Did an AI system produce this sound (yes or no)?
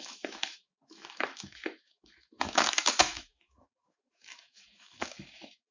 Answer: yes